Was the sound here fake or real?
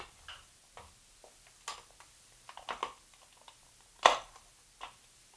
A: real